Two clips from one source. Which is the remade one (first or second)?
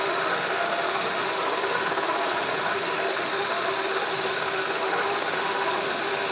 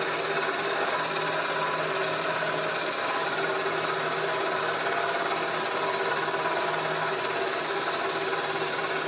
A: first